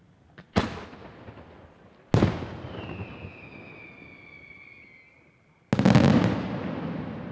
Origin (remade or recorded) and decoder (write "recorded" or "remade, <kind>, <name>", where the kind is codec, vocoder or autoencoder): recorded